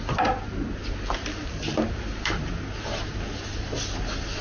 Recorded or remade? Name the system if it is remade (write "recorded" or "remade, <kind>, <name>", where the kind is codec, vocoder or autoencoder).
recorded